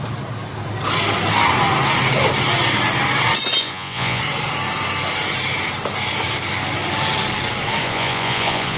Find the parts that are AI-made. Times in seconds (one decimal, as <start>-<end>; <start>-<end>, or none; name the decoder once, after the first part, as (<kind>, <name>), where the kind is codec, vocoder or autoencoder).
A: 3.6-4.2 (vocoder, Vocos); 7.8-8.8

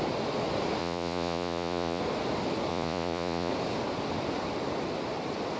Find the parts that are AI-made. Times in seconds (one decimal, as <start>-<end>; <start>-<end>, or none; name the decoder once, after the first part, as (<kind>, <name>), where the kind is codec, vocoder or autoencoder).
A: 0.8-2.0 (vocoder, Vocos); 2.7-3.5